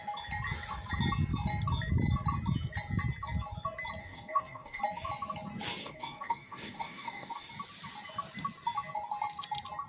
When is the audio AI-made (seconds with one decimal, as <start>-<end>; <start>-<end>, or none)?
4.0-4.8; 5.8-7.5

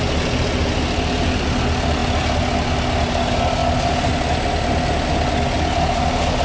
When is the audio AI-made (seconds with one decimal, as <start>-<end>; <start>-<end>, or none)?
none

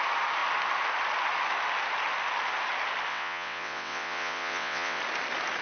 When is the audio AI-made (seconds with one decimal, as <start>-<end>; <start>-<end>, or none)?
3.1-5.0

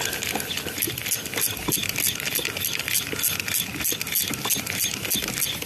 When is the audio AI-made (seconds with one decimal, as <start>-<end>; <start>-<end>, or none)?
none

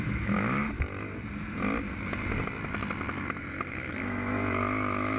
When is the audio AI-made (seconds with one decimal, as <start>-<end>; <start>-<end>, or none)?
0.0-0.6; 3.7-5.2

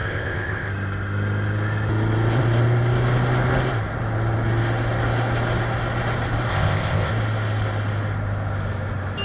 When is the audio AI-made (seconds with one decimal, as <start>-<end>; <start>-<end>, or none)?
0.0-0.7; 6.5-7.1

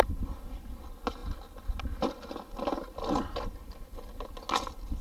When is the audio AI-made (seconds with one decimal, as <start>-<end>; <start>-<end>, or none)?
none

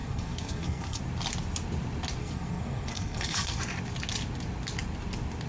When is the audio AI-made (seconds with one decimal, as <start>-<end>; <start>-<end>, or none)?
0.0-1.0; 2.2-3.6